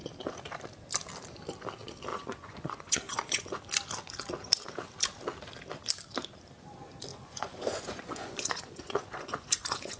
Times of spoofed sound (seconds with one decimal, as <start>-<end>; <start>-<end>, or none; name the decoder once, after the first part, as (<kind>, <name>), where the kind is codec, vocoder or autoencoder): 2.1-3.5 (vocoder, Vocos); 7.1-10.0